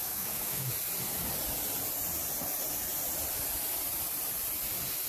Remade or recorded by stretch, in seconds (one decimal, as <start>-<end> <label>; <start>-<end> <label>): 0.0-0.7 remade; 0.7-5.1 recorded